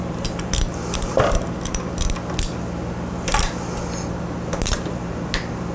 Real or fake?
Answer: real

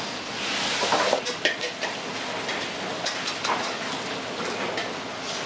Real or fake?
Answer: real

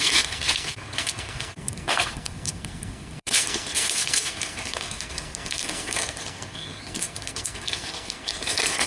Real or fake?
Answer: fake